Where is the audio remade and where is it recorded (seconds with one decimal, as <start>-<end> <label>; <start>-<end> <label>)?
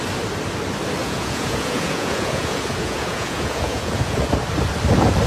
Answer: 0.0-1.0 recorded; 1.0-4.2 remade; 4.2-5.3 recorded